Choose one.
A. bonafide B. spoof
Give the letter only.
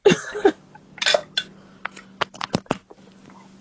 A